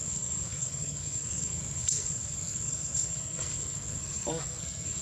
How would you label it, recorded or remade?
remade